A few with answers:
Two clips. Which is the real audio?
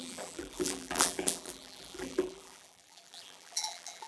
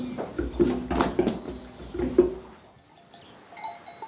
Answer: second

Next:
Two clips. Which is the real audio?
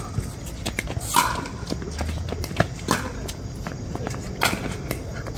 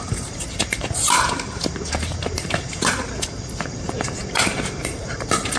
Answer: first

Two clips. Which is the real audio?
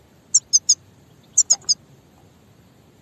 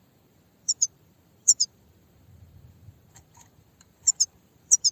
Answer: first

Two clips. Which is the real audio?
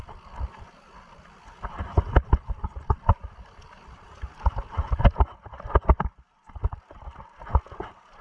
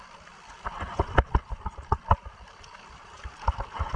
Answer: first